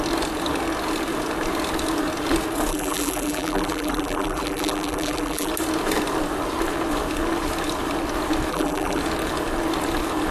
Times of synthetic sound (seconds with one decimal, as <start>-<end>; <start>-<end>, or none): 2.7-5.5; 8.5-9.0